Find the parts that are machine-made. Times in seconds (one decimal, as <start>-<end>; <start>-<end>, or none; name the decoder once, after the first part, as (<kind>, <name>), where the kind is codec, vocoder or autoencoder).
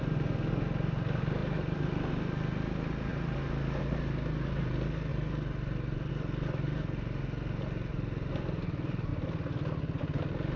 1.4-2.1 (vocoder, BigVGAN v2); 5.1-6.1; 9.1-10.0